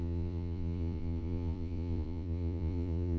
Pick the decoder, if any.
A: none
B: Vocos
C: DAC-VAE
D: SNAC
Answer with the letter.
B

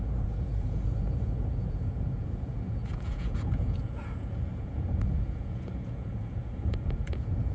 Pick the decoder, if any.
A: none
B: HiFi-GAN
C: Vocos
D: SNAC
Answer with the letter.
C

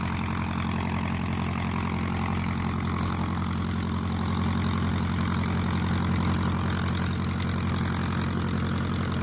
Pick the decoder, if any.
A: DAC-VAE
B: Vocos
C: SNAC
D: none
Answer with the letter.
D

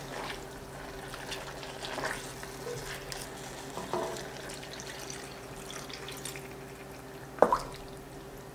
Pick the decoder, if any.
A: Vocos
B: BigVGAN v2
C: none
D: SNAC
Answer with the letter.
C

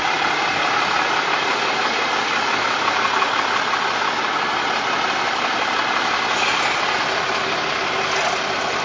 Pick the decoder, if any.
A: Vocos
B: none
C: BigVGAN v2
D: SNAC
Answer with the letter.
B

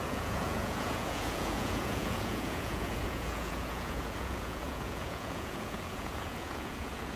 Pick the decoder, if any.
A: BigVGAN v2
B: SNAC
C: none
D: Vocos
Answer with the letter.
D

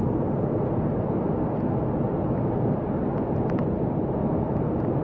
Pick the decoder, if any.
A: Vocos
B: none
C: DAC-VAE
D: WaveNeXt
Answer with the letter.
B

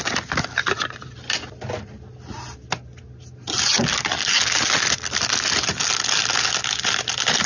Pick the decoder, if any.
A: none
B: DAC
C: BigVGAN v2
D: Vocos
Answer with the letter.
A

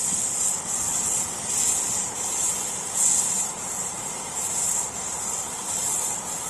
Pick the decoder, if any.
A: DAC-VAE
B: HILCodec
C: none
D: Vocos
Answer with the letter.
C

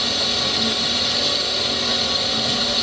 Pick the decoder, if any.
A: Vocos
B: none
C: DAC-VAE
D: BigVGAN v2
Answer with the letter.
B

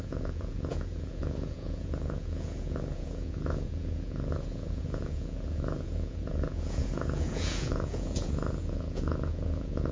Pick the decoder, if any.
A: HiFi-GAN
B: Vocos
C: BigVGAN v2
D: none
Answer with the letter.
B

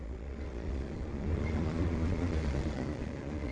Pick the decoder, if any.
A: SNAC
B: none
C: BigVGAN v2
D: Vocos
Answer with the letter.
D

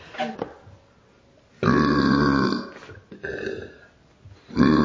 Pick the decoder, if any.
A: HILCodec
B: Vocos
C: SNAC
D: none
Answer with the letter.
D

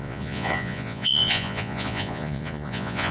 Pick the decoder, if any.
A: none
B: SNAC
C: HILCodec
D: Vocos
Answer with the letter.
D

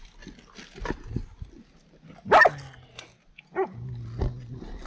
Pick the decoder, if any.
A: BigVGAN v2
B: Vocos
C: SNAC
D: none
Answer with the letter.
D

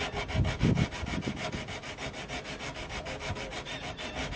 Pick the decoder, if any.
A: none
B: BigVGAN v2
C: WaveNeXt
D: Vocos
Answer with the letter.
A